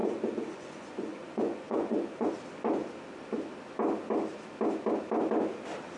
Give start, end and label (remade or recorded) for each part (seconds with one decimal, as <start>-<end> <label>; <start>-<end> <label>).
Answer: 0.0-2.3 remade; 2.3-6.0 recorded

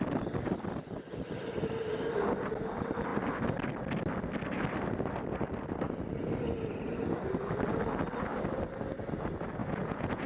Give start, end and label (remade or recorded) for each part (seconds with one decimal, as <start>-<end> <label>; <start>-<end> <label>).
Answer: 0.0-9.6 recorded; 9.6-10.3 remade

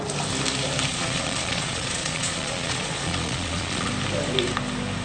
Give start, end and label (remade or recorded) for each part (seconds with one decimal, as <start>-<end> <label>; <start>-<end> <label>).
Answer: 0.0-0.9 recorded; 0.9-3.9 remade; 3.9-5.0 recorded

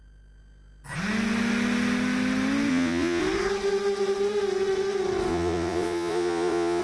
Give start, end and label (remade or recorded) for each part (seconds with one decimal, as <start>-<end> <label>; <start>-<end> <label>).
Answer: 0.0-2.7 recorded; 2.7-3.2 remade; 3.2-5.3 recorded; 5.3-6.8 remade

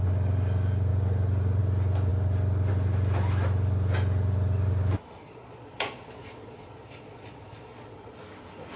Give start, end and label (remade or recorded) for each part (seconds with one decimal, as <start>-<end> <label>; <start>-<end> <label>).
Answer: 0.0-5.2 recorded; 5.2-8.2 remade; 8.2-8.8 recorded